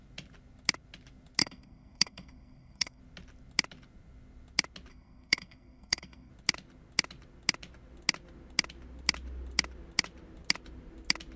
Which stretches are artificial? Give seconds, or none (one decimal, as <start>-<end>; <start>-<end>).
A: 1.4-3.0; 4.9-6.3